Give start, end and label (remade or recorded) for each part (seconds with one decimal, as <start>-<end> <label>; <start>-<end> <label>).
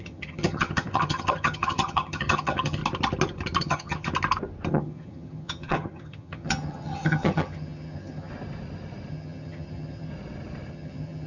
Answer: 0.0-2.8 remade; 2.8-3.6 recorded; 3.6-4.1 remade; 4.1-4.7 recorded; 4.7-8.3 remade; 8.3-9.1 recorded; 9.1-10.1 remade; 10.1-10.7 recorded; 10.7-11.3 remade